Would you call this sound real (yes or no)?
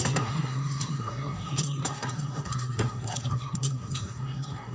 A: no